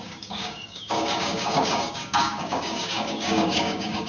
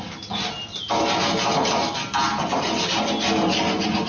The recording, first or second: second